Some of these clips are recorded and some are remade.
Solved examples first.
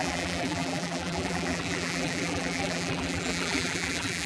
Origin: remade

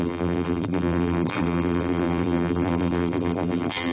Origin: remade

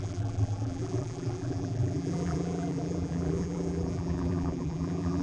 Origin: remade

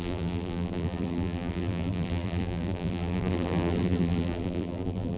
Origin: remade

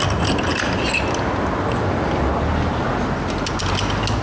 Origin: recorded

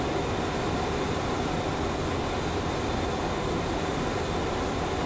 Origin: recorded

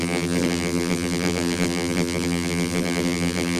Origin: remade